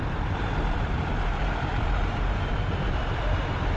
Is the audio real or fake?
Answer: fake